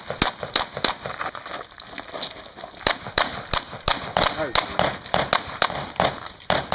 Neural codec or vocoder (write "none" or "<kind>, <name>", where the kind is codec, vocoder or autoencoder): none